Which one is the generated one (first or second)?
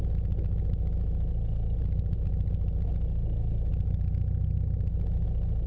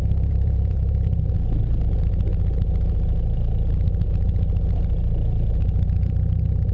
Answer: second